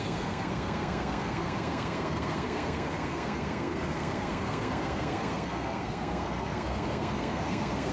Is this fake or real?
fake